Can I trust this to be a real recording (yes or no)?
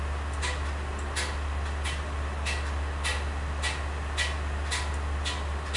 yes